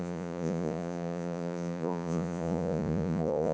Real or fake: fake